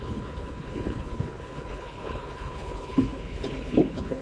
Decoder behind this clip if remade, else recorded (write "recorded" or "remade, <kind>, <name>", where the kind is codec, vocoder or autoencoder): remade, codec, HILCodec